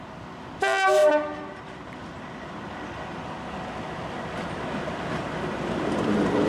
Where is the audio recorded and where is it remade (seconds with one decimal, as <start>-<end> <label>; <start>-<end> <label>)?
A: 0.0-6.5 recorded